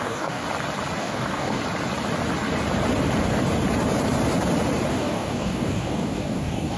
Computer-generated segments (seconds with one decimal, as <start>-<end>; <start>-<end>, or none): 0.0-0.4; 1.0-1.6; 4.9-6.8